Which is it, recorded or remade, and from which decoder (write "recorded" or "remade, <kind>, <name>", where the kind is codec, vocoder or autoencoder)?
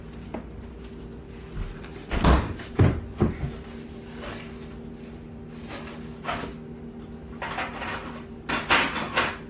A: recorded